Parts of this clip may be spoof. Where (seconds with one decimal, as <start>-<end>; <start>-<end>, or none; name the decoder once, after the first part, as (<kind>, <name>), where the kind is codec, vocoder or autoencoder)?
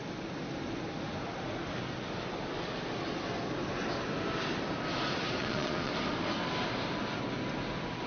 5.4-5.9 (vocoder, Vocos)